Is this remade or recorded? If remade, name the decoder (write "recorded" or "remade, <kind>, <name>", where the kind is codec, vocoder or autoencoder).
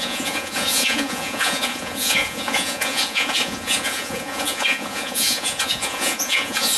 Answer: remade, vocoder, Vocos